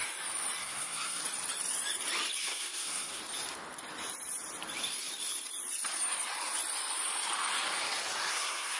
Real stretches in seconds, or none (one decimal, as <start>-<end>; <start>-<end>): 0.0-0.6; 1.2-2.4; 3.2-8.3